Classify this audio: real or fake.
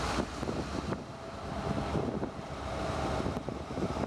real